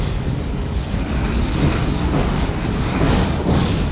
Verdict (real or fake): fake